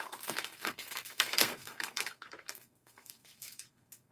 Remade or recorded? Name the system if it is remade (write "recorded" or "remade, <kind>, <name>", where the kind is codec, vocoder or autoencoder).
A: remade, codec, SNAC